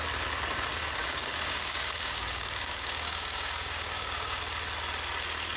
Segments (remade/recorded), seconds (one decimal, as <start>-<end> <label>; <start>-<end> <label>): 0.0-1.0 recorded; 1.0-4.4 remade; 4.4-5.6 recorded